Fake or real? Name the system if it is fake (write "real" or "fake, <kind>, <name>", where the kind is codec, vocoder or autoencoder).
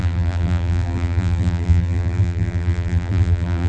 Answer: fake, vocoder, BigVGAN v2